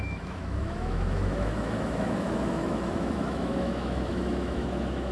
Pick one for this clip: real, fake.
fake